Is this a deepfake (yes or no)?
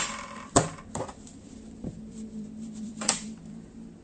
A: yes